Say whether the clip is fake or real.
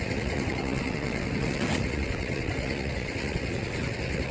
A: fake